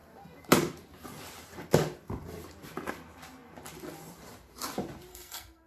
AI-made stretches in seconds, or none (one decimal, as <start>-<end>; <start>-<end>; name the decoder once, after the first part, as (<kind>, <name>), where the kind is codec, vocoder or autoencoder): 5.1-5.7 (codec, SNAC)